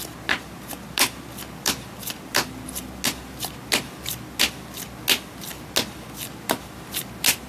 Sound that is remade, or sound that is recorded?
recorded